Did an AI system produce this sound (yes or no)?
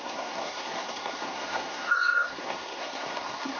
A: yes